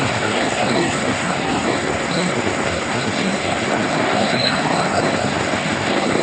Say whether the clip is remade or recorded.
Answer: remade